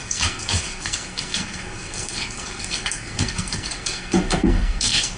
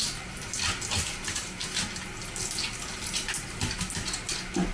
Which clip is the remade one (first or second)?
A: first